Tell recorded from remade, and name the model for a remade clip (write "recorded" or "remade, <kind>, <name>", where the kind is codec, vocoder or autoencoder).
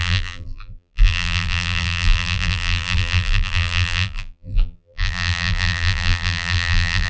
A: remade, vocoder, BigVGAN v2